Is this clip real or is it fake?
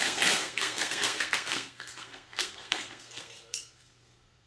fake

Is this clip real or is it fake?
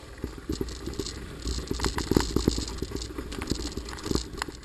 real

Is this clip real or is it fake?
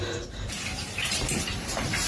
fake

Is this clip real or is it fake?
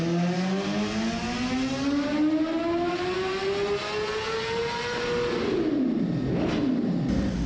real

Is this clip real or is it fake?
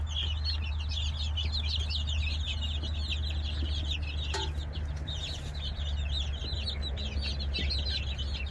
real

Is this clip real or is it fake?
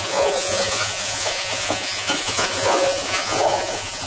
fake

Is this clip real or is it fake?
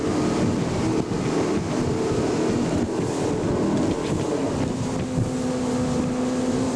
real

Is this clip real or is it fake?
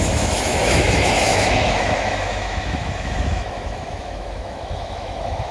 fake